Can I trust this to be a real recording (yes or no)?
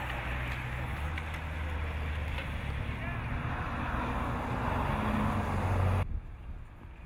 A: yes